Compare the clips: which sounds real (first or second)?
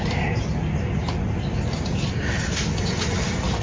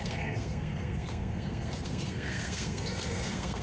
first